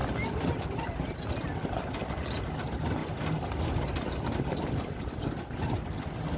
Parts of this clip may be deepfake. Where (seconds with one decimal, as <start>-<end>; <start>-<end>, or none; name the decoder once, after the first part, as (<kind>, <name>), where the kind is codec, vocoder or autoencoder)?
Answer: none